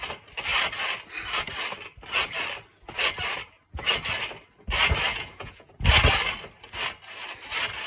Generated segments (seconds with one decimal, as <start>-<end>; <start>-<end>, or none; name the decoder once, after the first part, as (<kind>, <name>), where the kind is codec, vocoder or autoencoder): 5.1-5.7 (vocoder, Vocos)